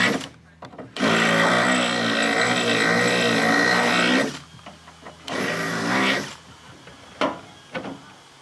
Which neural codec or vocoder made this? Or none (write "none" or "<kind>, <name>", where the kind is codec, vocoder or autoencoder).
none